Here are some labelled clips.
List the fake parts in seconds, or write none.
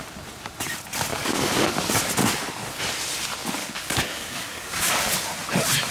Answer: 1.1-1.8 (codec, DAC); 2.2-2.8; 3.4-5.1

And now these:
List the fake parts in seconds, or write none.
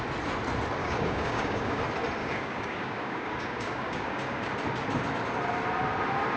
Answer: 0.8-1.8 (codec, DAC); 2.2-4.5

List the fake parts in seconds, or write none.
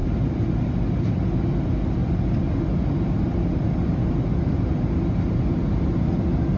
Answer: none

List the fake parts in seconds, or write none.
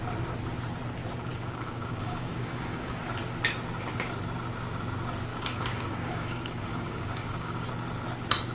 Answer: 1.3-3.0 (codec, DAC); 5.3-7.7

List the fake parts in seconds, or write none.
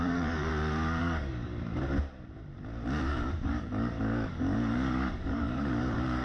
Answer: 0.0-0.5 (codec, DAC); 1.0-1.5; 3.0-6.2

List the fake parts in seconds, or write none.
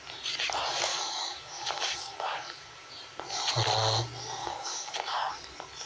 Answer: 0.9-2.9 (codec, DAC); 4.4-5.3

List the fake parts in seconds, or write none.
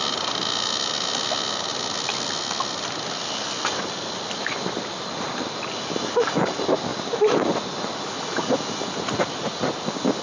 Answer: none